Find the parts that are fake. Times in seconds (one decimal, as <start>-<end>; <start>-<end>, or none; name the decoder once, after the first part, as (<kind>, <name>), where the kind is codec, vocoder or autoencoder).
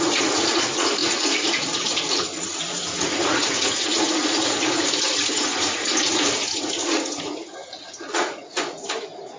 0.0-9.4 (vocoder, Vocos)